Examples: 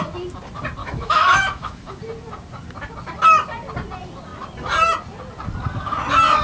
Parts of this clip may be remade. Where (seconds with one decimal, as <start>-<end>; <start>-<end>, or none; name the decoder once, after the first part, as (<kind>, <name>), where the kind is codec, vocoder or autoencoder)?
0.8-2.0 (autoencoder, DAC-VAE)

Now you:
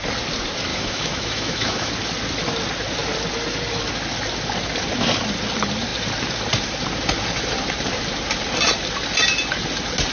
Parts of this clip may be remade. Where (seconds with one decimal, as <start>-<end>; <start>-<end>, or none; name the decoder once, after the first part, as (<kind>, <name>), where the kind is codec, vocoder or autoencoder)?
0.7-1.9 (autoencoder, DAC-VAE)

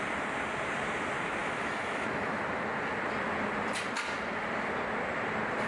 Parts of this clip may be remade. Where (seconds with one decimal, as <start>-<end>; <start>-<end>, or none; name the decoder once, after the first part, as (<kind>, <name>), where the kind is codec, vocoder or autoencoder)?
1.4-2.4 (autoencoder, DAC-VAE)

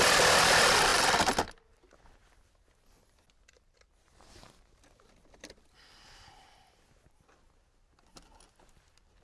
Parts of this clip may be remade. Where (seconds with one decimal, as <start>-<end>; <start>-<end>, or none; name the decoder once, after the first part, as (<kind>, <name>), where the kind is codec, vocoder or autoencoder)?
none

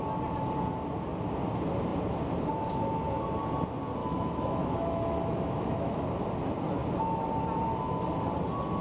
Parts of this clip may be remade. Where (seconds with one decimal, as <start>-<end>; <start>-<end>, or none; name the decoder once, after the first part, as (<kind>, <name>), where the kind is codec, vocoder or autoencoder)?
4.0-6.1 (autoencoder, DAC-VAE)